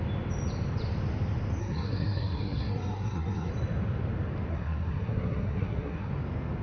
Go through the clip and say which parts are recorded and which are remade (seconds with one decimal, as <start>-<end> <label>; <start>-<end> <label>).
0.0-1.6 recorded; 1.6-3.5 remade; 3.5-4.5 recorded; 4.5-6.1 remade; 6.1-6.6 recorded